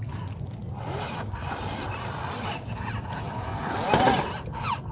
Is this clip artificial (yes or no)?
no